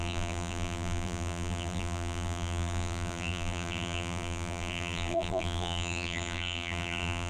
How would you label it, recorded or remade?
remade